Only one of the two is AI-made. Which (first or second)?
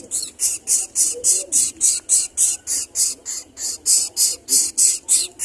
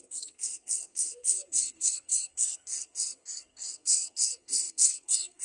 second